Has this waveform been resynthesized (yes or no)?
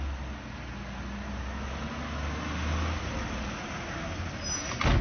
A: no